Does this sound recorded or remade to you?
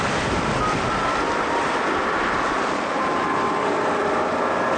recorded